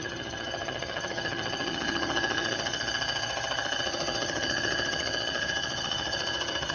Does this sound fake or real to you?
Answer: fake